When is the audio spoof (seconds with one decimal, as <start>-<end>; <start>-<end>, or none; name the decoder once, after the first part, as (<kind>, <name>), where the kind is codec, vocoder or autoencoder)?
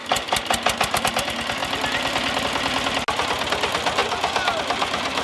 none